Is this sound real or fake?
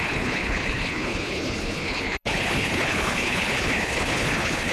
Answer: fake